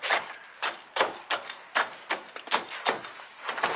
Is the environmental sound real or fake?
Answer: real